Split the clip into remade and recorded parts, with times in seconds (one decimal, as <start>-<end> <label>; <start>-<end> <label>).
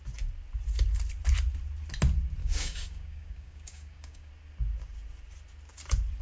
0.0-2.4 recorded; 2.4-4.3 remade; 4.3-6.2 recorded